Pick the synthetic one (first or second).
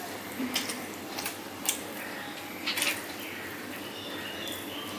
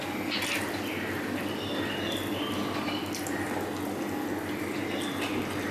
first